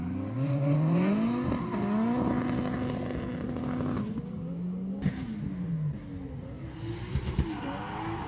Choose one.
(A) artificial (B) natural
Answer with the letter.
B